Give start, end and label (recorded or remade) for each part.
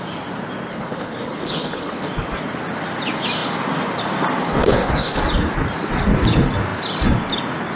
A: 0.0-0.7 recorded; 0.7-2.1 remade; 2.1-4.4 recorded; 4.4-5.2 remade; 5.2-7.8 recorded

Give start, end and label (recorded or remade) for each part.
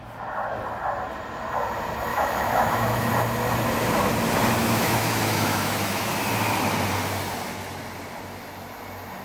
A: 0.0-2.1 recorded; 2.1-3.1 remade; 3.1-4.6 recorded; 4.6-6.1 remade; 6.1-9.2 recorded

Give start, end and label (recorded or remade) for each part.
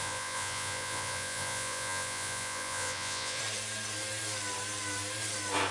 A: 0.0-3.4 remade; 3.4-5.7 recorded